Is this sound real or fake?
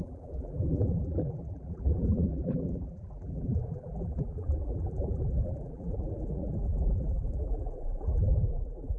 fake